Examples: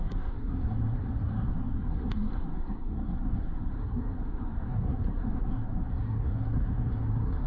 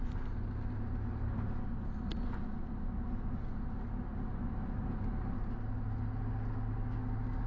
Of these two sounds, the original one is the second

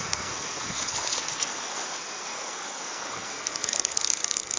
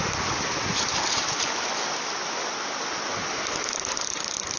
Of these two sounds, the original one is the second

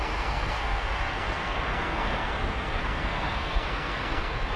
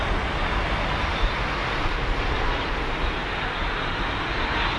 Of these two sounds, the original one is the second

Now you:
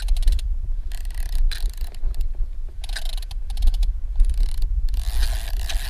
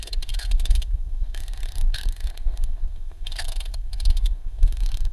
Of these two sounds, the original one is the first